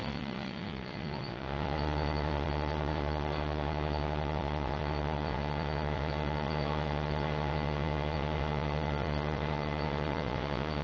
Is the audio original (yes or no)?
no